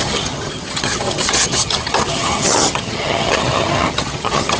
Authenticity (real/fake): fake